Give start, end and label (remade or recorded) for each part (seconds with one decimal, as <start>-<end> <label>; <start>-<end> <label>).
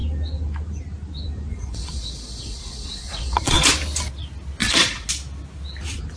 0.0-1.5 recorded; 1.5-3.7 remade; 3.7-4.6 recorded; 4.6-5.1 remade; 5.1-6.2 recorded